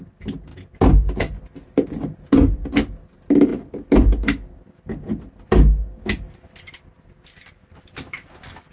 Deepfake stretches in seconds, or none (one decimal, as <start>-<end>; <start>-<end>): none